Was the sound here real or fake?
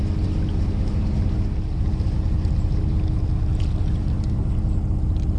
real